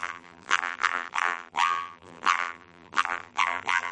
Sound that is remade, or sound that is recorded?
remade